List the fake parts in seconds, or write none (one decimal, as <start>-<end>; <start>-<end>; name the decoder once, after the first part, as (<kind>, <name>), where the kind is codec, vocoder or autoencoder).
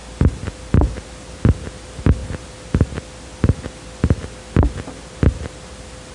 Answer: none